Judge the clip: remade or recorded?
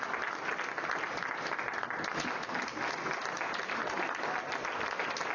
recorded